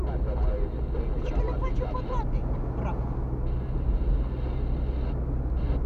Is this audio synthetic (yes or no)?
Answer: no